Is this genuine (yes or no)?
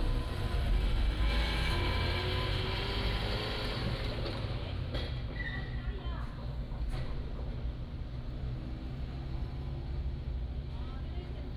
yes